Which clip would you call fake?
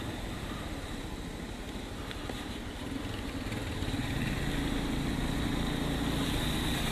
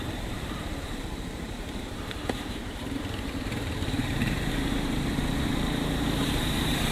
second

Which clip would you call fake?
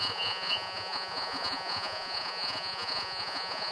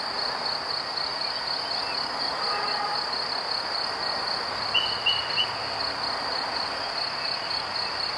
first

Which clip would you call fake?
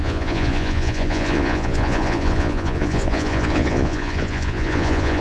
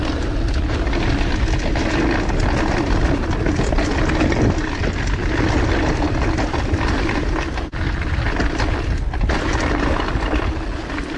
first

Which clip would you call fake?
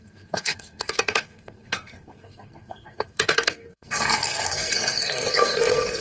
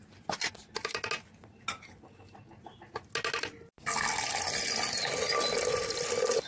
first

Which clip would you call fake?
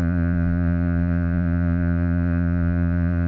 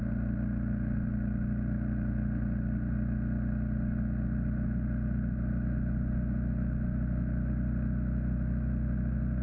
first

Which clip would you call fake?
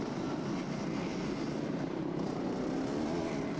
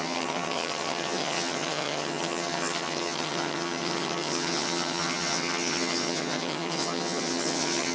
second